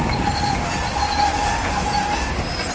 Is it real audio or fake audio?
real